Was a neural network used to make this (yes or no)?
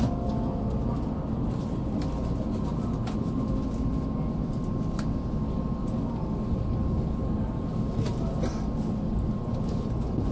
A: no